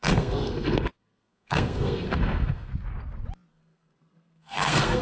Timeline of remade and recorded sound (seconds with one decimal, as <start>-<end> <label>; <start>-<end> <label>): 0.0-2.7 remade; 2.7-3.5 recorded; 3.5-5.0 remade